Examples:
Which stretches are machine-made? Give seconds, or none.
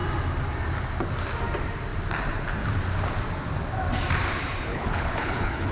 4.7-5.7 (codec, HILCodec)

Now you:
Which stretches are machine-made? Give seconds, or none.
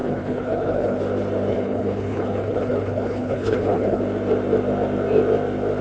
0.0-1.0 (codec, HILCodec); 1.5-4.0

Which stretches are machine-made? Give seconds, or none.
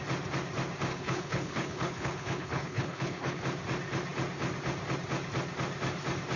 0.9-3.4 (codec, HILCodec)